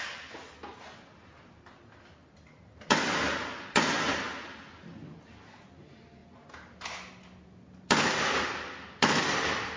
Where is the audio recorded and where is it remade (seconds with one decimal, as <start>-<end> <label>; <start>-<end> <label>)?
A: 0.0-9.8 recorded

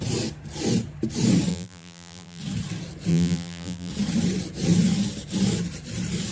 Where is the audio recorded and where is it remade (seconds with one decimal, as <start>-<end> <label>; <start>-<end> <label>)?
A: 0.0-1.5 recorded; 1.5-2.4 remade; 2.4-3.1 recorded; 3.1-3.9 remade; 3.9-6.3 recorded

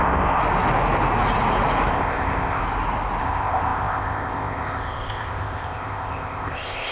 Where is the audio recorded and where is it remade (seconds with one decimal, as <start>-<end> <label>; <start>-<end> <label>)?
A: 0.0-0.4 remade; 0.4-1.9 recorded; 1.9-2.6 remade; 2.6-3.2 recorded; 3.2-6.9 remade

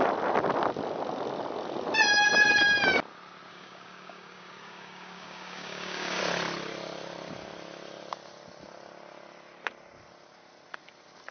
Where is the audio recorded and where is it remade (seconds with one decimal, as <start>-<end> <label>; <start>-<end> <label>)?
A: 0.0-3.5 recorded; 3.5-6.2 remade; 6.2-11.3 recorded

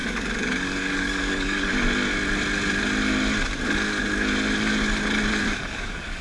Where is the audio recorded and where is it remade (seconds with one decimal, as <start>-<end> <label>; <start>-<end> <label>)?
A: 0.0-1.7 remade; 1.7-5.4 recorded; 5.4-6.2 remade